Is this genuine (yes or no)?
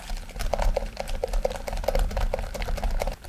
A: no